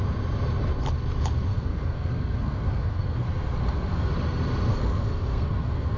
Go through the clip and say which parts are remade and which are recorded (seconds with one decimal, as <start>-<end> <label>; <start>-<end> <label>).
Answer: 0.0-1.5 recorded; 1.5-4.1 remade; 4.1-4.7 recorded; 4.7-6.0 remade